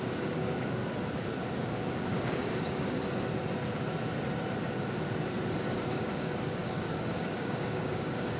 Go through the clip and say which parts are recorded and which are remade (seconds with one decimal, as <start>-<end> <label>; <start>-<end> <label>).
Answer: 0.0-0.8 remade; 0.8-1.6 recorded; 1.6-3.0 remade; 3.0-5.7 recorded; 5.7-8.4 remade